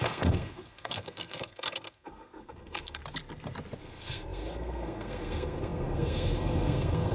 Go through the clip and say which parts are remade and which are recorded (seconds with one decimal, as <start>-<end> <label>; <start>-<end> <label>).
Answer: 0.0-3.0 remade; 3.0-3.8 recorded; 3.8-7.1 remade